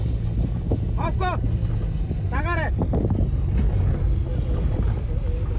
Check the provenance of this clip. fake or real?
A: real